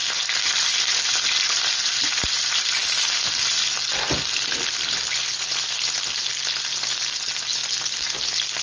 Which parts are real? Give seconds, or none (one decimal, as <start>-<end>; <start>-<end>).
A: 0.0-8.6